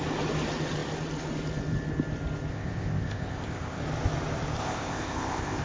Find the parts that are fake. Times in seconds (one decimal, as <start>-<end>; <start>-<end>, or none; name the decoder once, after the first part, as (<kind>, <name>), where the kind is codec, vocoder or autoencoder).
2.5-3.8 (codec, ZipCodec); 4.6-5.6